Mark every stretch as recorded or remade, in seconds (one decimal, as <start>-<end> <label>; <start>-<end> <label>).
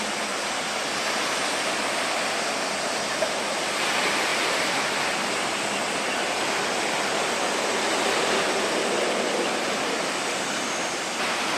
0.0-11.6 recorded